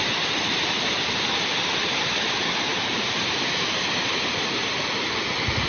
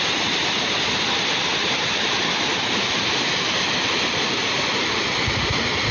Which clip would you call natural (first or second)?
first